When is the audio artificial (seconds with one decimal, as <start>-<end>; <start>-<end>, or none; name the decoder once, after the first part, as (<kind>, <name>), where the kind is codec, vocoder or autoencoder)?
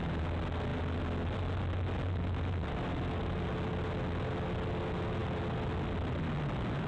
none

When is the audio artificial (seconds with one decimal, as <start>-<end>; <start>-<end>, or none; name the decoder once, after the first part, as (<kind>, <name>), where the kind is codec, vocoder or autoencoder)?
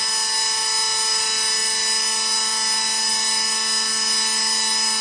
none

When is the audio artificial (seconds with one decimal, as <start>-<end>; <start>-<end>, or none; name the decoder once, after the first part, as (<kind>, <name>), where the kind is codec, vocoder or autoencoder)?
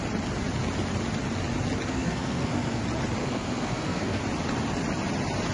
1.9-2.8 (codec, SNAC); 3.2-4.2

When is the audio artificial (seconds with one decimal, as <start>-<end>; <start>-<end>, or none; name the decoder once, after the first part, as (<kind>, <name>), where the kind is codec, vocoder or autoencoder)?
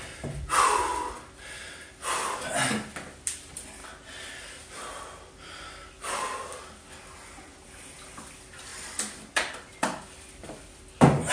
8.7-11.3 (vocoder, BigVGAN v2)